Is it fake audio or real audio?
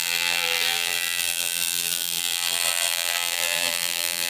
fake